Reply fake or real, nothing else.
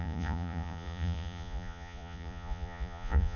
fake